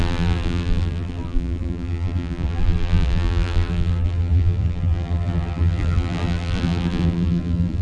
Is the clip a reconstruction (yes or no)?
yes